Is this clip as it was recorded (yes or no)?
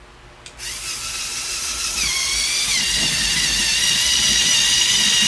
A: yes